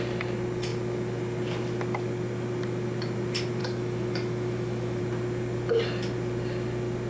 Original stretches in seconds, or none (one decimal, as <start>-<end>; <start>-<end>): 0.0-3.6; 5.0-7.1